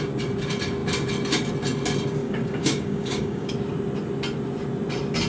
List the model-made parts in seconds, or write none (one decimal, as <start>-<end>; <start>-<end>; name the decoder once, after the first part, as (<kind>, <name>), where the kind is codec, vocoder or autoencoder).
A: 2.2-3.5 (codec, DAC)